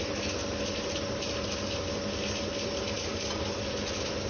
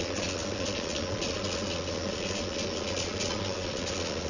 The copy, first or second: second